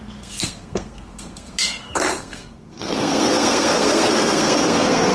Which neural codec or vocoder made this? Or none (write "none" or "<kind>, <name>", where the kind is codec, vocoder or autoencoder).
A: codec, SNAC